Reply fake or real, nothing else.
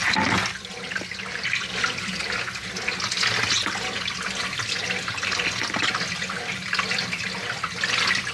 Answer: real